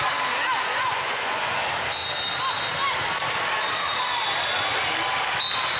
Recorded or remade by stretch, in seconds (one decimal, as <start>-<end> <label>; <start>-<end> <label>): 0.0-0.7 recorded; 0.7-1.6 remade; 1.6-5.8 recorded